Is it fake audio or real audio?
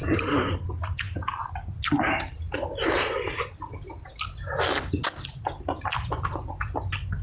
real